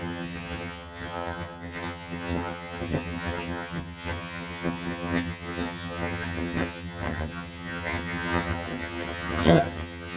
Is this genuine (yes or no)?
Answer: no